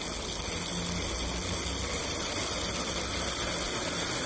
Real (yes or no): yes